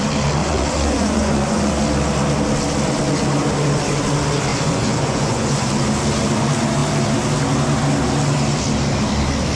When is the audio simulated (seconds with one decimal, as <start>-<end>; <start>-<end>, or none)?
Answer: 0.4-1.7; 4.5-5.7